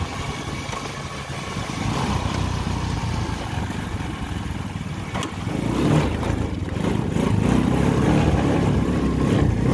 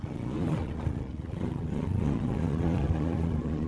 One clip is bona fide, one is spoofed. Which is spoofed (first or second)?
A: second